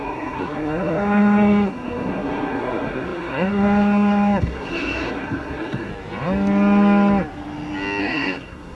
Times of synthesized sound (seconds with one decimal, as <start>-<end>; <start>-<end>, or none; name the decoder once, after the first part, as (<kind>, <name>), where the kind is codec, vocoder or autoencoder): 0.0-5.9 (codec, SNAC); 8.0-8.8